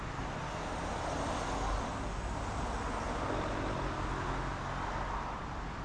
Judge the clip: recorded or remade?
recorded